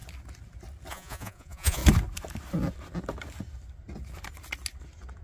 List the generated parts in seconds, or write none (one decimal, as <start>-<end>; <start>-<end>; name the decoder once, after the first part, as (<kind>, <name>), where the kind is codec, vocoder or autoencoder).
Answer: 0.9-1.8 (vocoder, Vocos)